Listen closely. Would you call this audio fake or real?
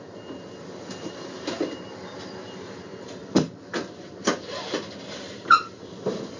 fake